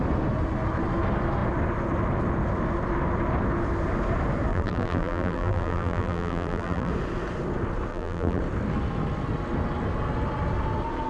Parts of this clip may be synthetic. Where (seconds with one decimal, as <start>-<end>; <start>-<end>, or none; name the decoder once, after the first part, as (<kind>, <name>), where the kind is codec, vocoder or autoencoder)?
4.5-6.9 (vocoder, BigVGAN v2); 7.9-8.4